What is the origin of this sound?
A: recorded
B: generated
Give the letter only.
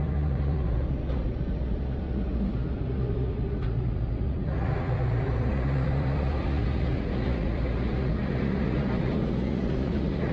B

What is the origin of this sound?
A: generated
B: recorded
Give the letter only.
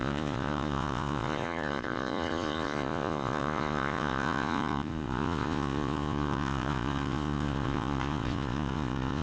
A